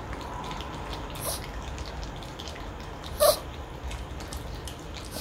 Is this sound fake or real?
real